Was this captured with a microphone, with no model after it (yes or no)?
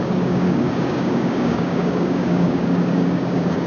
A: no